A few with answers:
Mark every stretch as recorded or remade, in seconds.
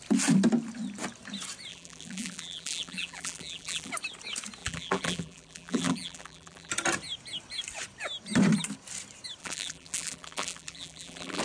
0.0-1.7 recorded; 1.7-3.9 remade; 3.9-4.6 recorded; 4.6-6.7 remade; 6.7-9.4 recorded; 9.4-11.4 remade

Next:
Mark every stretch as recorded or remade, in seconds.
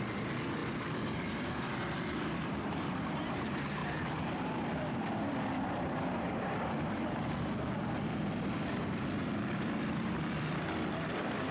0.0-11.5 remade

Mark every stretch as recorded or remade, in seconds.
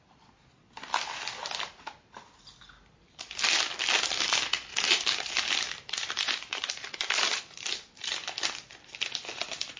0.0-4.7 recorded; 4.7-7.4 remade; 7.4-9.8 recorded